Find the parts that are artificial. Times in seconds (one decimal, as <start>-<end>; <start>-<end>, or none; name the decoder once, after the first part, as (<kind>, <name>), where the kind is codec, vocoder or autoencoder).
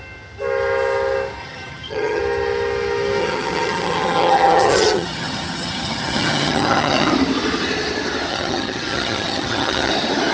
1.4-2.2 (vocoder, HiFi-GAN); 3.2-7.1; 8.3-9.9